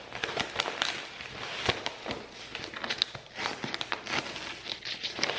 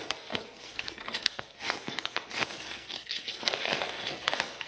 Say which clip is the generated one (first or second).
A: second